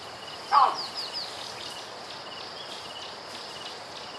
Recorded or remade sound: recorded